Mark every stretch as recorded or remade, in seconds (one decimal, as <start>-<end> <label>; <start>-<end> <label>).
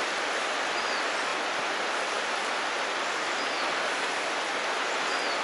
0.0-5.4 recorded